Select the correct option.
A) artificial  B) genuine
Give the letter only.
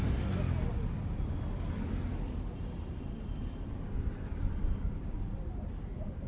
B